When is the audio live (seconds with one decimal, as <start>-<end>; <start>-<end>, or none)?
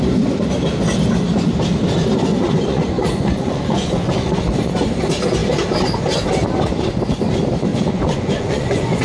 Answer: 0.0-2.3; 4.4-7.7